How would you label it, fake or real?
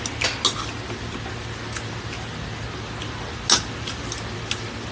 real